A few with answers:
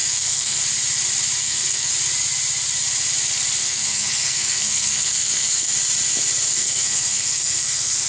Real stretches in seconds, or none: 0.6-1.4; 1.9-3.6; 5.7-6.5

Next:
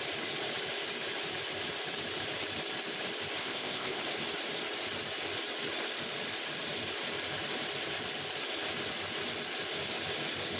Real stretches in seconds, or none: 0.0-3.4; 4.0-10.6

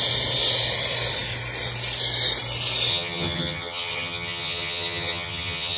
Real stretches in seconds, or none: 0.0-2.9

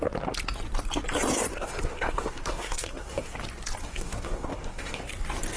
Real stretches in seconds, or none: 0.0-1.5; 3.3-3.8; 5.1-5.6